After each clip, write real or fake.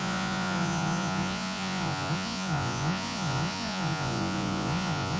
fake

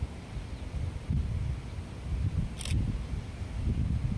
real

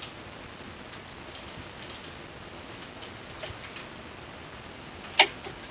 real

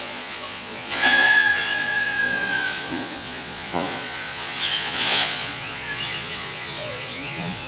fake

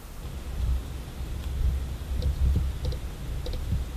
real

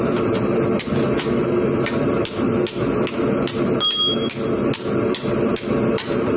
real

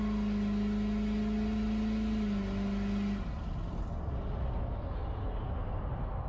real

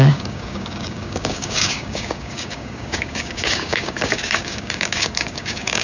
fake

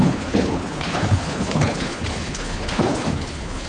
fake